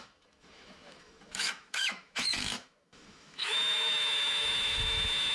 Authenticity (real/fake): fake